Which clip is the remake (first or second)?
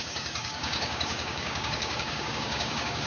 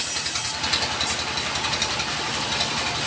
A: first